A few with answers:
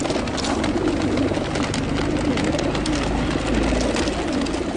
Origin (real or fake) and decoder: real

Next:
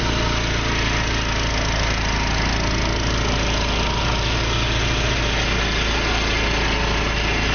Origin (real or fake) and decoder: real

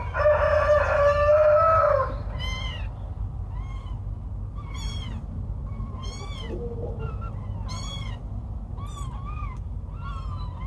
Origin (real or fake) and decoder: real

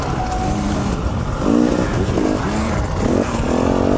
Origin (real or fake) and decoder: real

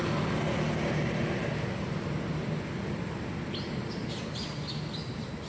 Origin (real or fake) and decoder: real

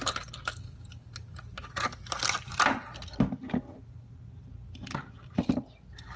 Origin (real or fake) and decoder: real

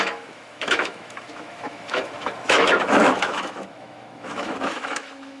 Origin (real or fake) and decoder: fake, autoencoder, DAC-VAE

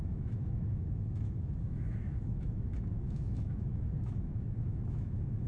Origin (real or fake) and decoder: fake, autoencoder, DAC-VAE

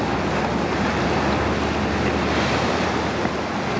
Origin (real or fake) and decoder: real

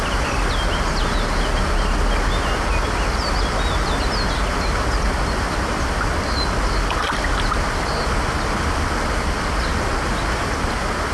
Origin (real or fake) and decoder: real